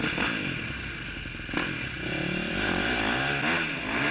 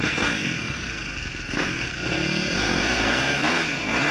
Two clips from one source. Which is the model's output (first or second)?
second